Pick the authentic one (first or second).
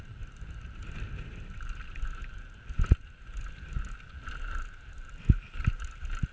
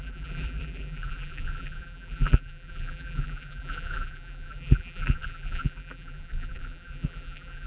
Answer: first